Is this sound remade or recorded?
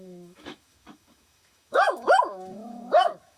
remade